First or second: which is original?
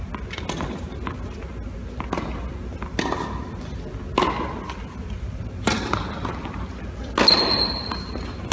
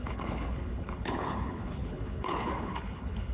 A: first